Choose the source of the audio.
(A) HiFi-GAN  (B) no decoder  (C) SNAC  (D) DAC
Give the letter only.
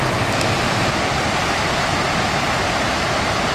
B